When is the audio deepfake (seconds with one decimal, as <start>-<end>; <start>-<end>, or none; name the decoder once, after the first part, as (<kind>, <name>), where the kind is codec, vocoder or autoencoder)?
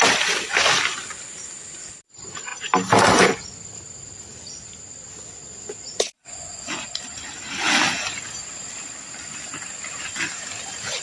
6.2-6.9 (vocoder, Vocos)